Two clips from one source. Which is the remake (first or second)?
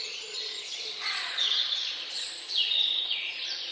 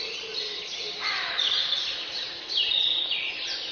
first